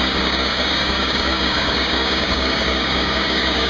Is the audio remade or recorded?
remade